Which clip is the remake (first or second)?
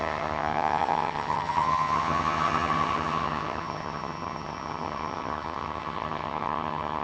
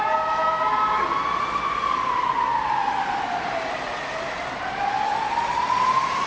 first